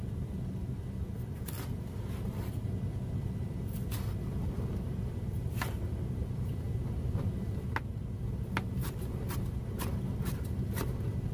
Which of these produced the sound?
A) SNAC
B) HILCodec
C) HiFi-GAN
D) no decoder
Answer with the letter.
D